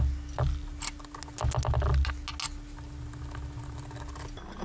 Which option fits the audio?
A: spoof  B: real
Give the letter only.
B